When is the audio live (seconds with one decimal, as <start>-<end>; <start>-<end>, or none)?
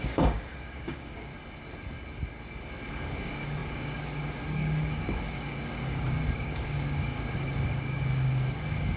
1.3-2.9